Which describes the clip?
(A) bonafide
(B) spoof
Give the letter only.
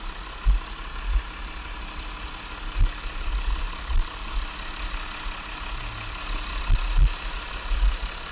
A